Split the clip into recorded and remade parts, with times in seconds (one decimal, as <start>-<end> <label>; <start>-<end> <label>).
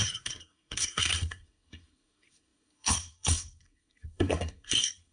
0.0-5.1 remade